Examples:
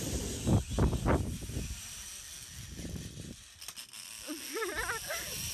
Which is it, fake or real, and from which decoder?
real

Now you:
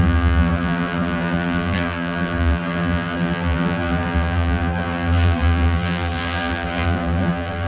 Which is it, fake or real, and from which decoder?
fake, vocoder, BigVGAN v2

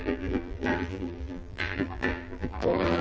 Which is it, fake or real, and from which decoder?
fake, vocoder, BigVGAN v2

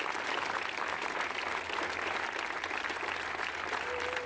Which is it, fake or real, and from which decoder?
real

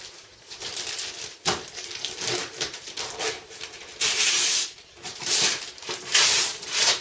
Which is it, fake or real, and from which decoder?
fake, vocoder, BigVGAN v2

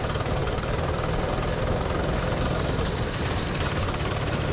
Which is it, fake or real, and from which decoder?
fake, vocoder, BigVGAN v2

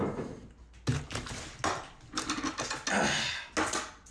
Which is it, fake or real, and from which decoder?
real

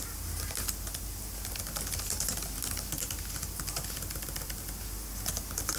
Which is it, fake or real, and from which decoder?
real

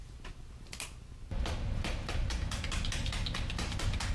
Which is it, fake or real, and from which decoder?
real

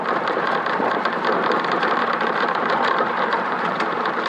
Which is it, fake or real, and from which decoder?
fake, vocoder, BigVGAN v2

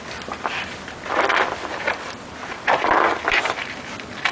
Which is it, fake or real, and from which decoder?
fake, vocoder, BigVGAN v2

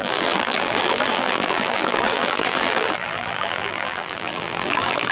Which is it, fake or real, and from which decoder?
fake, vocoder, BigVGAN v2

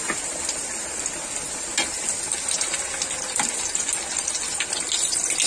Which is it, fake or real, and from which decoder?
real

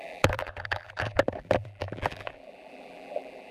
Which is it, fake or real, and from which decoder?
fake, vocoder, BigVGAN v2